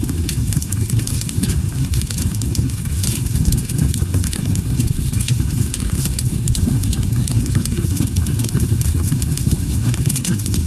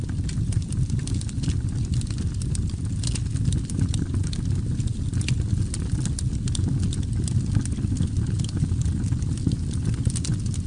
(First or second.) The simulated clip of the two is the first